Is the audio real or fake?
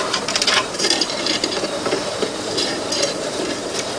fake